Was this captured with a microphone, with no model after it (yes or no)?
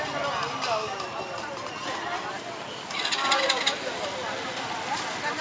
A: yes